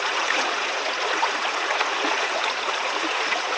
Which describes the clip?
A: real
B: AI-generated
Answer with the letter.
B